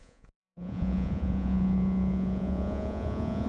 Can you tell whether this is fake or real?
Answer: fake